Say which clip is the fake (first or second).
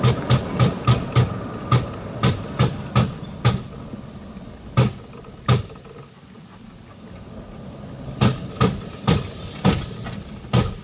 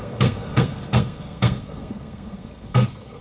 second